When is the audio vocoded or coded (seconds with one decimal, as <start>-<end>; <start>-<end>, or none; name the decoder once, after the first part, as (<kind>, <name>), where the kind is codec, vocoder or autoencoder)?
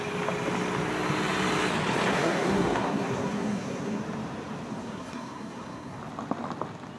2.1-4.0 (codec, SNAC); 4.7-6.0